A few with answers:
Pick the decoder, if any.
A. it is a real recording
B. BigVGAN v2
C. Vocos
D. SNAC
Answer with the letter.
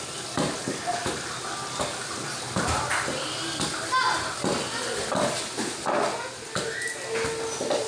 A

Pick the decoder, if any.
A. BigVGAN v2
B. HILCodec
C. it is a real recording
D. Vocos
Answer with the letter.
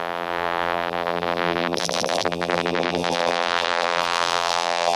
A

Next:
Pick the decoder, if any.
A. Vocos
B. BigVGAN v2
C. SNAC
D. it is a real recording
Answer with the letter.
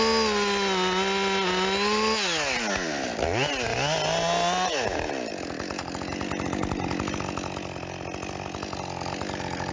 D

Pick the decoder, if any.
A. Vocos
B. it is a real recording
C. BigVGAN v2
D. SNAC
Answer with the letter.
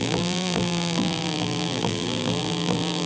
C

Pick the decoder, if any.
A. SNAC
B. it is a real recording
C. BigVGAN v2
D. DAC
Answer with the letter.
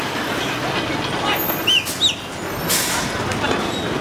B